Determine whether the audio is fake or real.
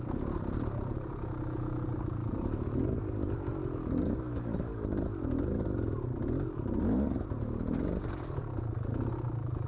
real